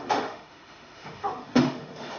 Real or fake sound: fake